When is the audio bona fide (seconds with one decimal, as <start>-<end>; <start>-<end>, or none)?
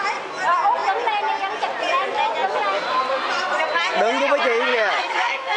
0.0-4.7